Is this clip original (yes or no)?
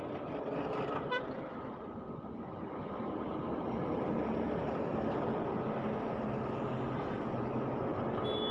yes